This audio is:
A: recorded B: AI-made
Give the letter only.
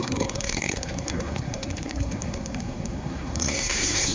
B